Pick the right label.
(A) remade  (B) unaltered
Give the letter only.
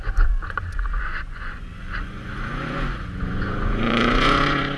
A